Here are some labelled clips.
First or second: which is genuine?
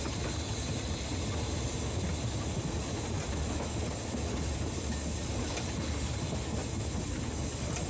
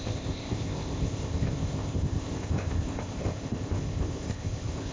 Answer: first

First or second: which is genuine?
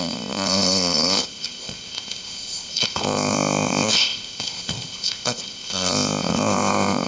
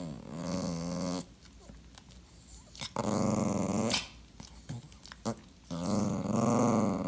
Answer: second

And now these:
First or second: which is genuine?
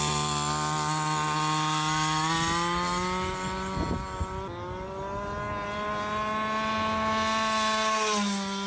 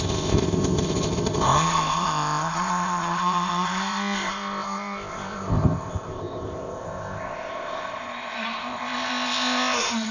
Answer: first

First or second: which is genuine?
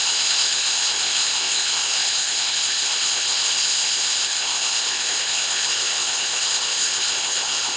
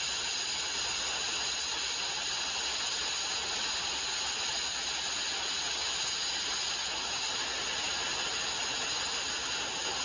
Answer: second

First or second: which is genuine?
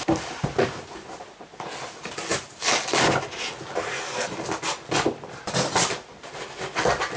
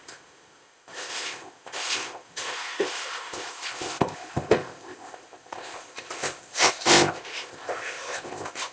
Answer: first